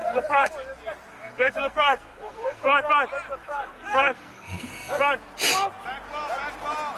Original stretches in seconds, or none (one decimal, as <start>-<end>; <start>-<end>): 0.5-1.1; 2.9-3.4; 5.0-7.0